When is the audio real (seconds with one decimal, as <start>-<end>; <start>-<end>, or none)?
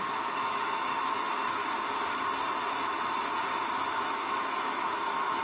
1.6-3.8